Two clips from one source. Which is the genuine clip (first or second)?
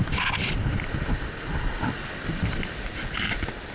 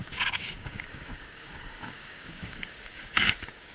first